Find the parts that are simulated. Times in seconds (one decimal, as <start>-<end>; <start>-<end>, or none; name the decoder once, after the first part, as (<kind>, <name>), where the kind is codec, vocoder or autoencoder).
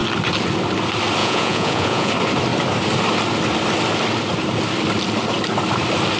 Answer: 1.2-2.1 (vocoder, Vocos)